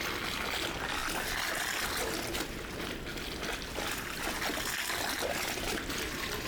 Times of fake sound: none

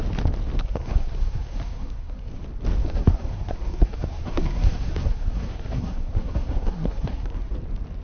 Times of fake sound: 0.6-2.3; 2.8-7.5

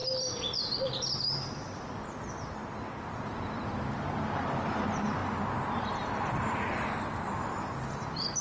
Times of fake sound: 0.0-2.6; 3.1-5.2; 6.3-8.4

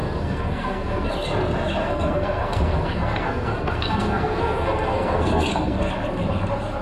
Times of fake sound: 0.0-1.1; 1.8-5.9

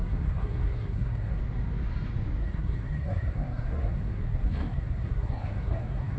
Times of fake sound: 0.0-1.4; 2.4-6.2